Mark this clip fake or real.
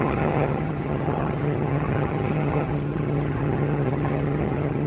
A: fake